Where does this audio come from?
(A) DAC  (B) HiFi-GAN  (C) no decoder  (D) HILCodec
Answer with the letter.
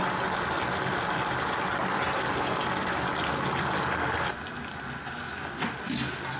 C